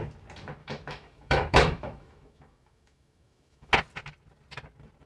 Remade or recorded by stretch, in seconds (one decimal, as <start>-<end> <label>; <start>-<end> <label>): 0.0-0.6 recorded; 0.6-3.7 remade; 3.7-5.1 recorded